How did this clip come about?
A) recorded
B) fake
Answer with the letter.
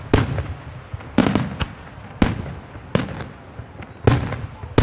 A